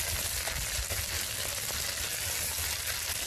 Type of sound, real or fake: real